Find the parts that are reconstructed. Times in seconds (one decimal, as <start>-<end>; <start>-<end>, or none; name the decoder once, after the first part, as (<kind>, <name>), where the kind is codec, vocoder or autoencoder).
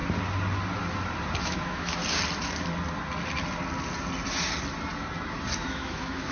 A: 1.4-2.0 (autoencoder, DAC-VAE); 5.6-6.3